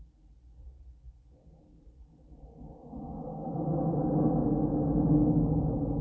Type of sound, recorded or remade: recorded